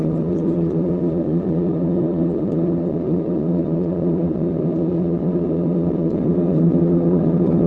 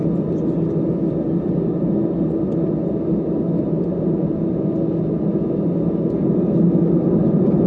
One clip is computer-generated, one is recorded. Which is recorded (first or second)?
second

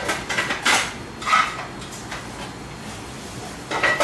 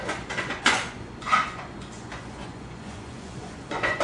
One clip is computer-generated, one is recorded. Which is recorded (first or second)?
first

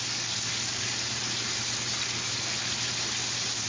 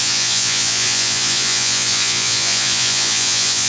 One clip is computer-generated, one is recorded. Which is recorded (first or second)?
first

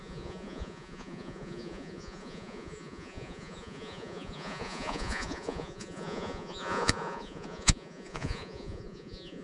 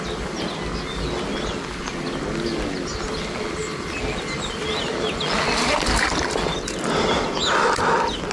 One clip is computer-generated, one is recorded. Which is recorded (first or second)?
second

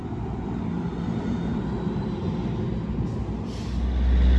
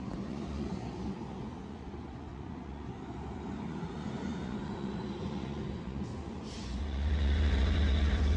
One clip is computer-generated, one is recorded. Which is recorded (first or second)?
first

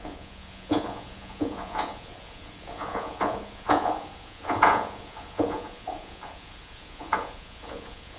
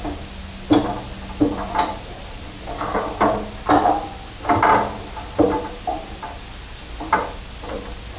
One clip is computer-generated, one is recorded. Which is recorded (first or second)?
second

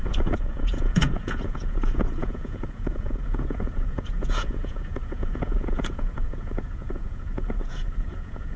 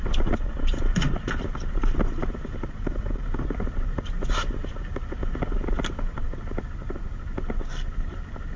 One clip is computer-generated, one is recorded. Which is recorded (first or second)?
second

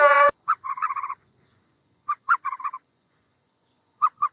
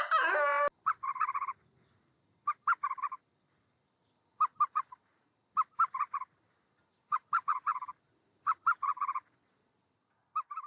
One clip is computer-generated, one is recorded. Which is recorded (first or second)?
second